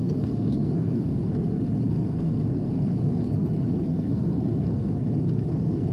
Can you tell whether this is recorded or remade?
remade